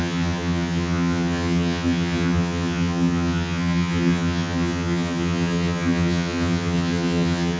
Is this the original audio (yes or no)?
no